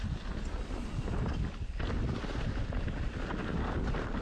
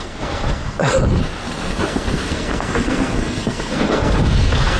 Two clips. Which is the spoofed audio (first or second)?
second